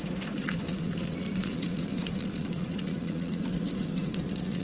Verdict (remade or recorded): remade